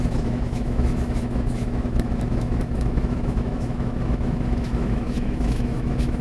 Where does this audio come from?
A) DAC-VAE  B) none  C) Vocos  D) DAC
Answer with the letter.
A